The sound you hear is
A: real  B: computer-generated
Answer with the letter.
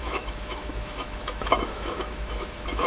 B